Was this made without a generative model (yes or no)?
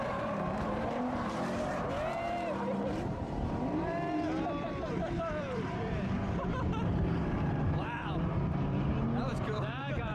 no